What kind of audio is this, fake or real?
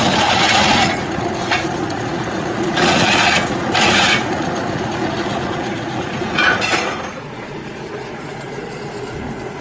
fake